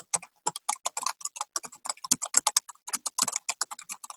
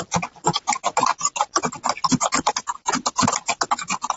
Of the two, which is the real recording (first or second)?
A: first